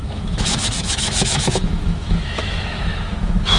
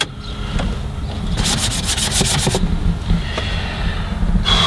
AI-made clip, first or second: first